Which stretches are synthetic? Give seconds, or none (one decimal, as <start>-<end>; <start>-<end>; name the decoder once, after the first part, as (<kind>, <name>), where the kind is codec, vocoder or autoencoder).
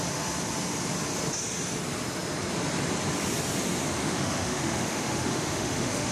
4.0-6.1 (autoencoder, DAC-VAE)